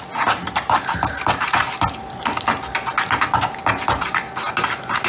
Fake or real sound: real